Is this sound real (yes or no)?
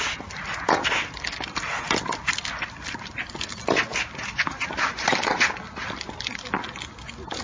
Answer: yes